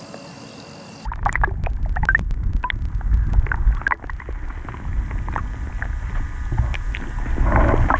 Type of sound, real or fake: real